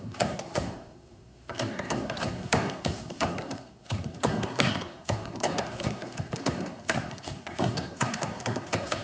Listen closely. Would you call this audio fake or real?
fake